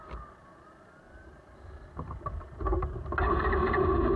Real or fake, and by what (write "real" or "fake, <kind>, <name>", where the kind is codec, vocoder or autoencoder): real